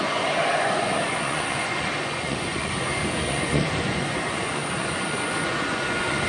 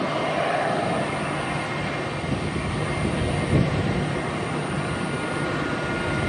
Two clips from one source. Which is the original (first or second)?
second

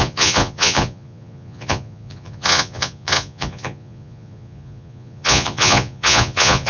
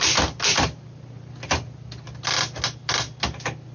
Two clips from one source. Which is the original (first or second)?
second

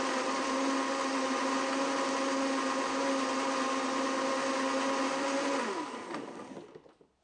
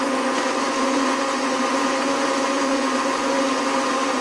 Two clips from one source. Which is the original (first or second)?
first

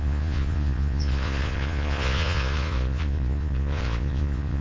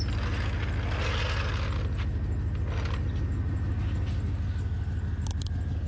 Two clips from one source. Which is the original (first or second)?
second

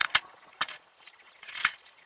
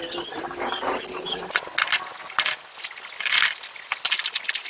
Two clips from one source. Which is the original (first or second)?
second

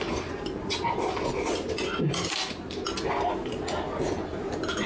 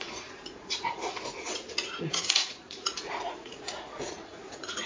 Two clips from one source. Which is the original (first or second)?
first